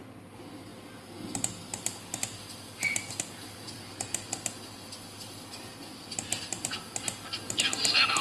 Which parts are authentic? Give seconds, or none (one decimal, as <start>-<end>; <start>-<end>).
0.0-8.2